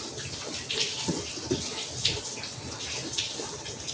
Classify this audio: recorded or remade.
recorded